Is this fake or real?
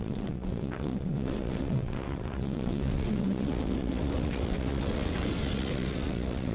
fake